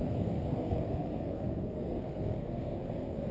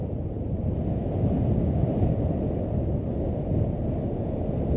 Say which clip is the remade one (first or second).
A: first